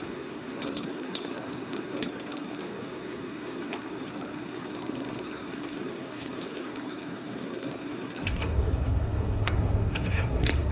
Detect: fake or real fake